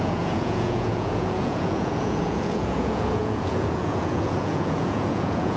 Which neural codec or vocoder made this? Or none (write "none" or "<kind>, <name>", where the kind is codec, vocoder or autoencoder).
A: vocoder, Vocos